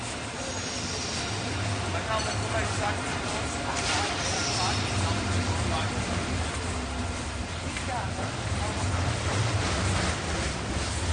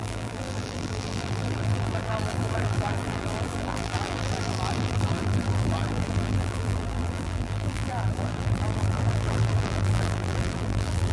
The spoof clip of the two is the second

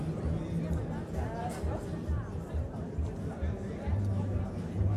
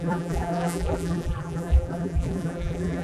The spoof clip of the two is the second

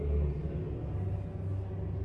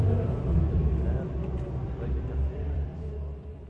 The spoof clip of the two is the second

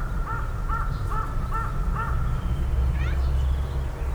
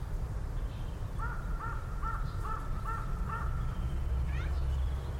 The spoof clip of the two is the second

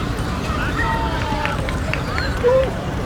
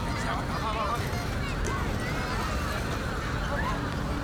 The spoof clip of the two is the first